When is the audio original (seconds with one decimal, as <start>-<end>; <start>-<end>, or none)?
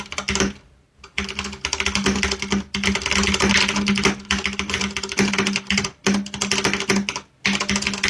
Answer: 0.0-8.1